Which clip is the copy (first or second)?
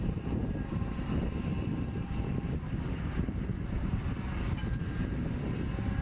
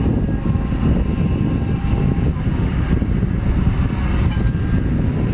first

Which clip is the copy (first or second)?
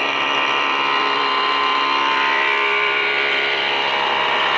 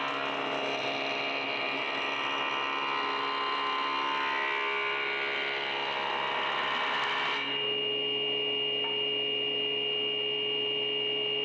first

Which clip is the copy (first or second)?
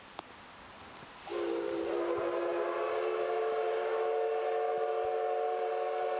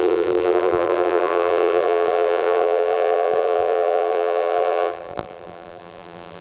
second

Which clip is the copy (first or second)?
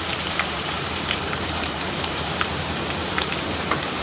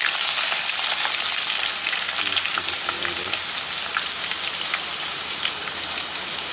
first